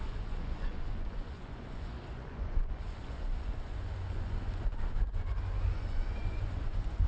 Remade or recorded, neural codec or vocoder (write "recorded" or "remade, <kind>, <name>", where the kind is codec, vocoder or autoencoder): remade, vocoder, Vocos